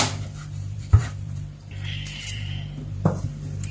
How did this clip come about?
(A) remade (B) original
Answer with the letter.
A